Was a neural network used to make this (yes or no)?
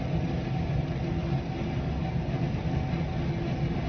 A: no